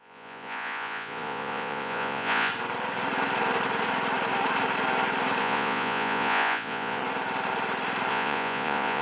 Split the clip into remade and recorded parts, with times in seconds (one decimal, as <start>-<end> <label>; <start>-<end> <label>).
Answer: 0.0-2.5 remade; 2.5-5.4 recorded; 5.4-7.0 remade; 7.0-8.1 recorded; 8.1-9.0 remade